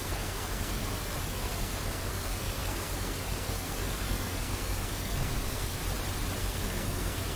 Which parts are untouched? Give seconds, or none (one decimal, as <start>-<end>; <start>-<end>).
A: 5.8-6.4